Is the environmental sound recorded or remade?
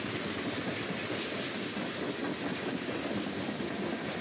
recorded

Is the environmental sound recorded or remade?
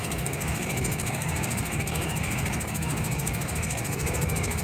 remade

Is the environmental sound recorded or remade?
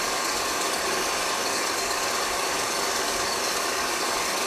remade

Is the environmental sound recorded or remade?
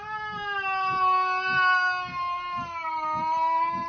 recorded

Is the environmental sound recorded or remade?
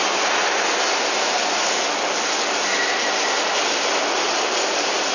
recorded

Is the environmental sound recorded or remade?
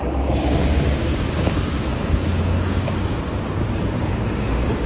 remade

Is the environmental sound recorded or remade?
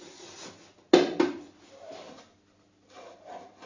recorded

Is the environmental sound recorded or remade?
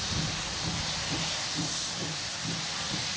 recorded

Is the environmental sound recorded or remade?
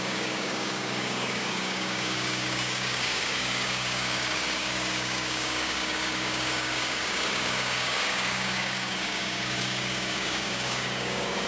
remade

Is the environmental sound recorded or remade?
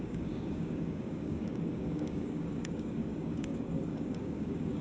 remade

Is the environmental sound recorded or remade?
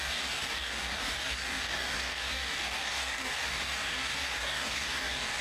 remade